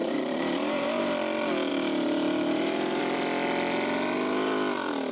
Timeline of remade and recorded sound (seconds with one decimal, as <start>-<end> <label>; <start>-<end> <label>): 0.0-1.0 remade; 1.0-1.7 recorded; 1.7-3.0 remade; 3.0-5.1 recorded